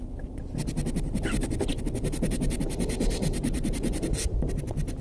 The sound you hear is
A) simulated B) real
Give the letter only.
B